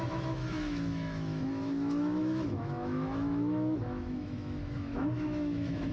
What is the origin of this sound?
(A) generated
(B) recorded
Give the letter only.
A